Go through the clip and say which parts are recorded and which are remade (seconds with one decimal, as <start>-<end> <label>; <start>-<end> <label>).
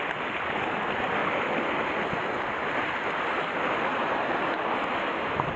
0.0-5.6 recorded